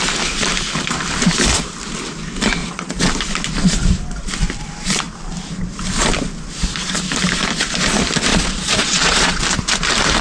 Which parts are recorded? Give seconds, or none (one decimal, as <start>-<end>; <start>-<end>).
0.0-2.6; 3.1-8.3; 9.4-10.2